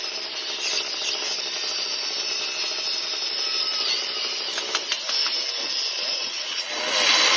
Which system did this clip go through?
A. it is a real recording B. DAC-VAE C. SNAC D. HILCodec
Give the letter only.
A